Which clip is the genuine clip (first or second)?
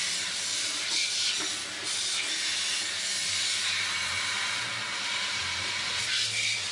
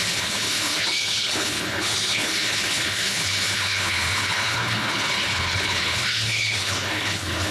first